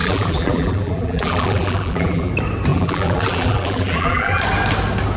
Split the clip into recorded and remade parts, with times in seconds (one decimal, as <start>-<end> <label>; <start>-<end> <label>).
0.0-2.3 remade; 2.3-2.7 recorded; 2.7-4.4 remade; 4.4-5.2 recorded